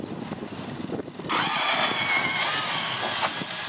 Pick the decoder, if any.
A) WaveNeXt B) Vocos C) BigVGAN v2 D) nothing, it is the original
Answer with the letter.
D